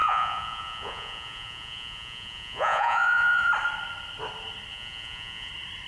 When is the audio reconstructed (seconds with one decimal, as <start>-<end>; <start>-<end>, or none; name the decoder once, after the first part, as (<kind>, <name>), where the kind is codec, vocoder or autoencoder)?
0.0-3.5 (vocoder, Vocos); 4.7-5.5